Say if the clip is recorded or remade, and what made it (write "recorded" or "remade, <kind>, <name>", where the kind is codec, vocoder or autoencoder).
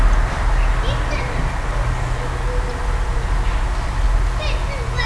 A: recorded